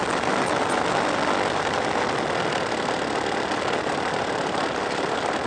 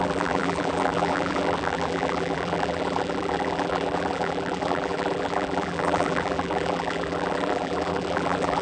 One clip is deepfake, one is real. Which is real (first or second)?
first